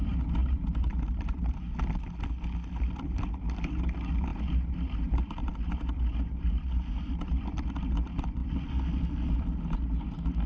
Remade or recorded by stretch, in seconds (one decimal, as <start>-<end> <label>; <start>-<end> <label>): 0.0-0.4 recorded; 0.4-1.7 remade; 1.7-4.3 recorded; 4.3-7.6 remade; 7.6-10.5 recorded